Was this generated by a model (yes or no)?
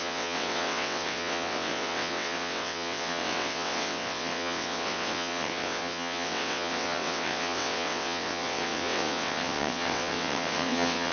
yes